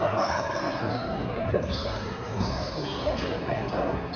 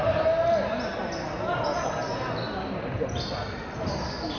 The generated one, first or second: first